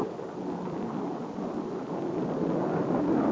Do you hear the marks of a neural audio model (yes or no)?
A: no